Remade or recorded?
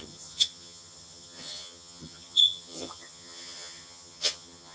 remade